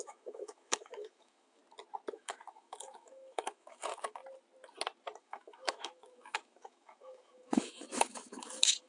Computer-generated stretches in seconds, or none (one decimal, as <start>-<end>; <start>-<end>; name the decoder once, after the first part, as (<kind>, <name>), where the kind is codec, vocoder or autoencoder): 0.0-1.6 (autoencoder, DAC-VAE); 2.1-4.2; 5.2-8.9

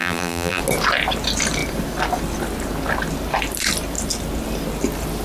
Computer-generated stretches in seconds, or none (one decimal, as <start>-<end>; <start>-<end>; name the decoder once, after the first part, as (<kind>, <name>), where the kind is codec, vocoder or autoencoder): 0.0-0.6 (vocoder, BigVGAN v2)

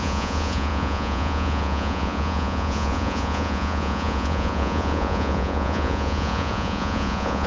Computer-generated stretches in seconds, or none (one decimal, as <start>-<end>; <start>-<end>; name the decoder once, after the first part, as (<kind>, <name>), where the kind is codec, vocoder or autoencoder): 0.0-7.5 (vocoder, Vocos)